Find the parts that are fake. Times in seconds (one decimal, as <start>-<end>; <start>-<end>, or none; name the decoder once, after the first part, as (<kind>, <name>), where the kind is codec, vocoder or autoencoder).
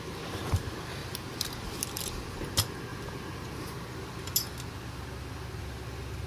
none